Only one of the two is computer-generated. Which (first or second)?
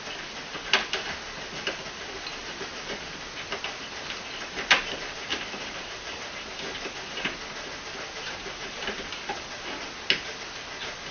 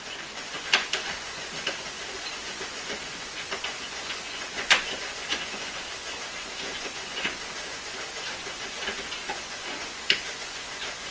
second